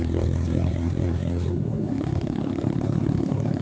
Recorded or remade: remade